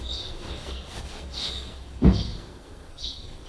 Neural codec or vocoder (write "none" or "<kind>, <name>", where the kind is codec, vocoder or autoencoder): codec, SNAC